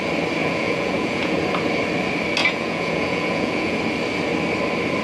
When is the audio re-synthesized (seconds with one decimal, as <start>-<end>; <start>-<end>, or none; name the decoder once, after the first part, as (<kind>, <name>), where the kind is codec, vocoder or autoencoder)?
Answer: 0.4-1.4 (vocoder, Vocos); 2.4-3.8